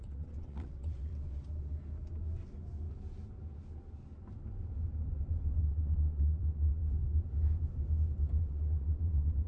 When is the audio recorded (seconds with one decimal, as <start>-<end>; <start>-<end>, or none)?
1.1-5.6; 6.8-8.4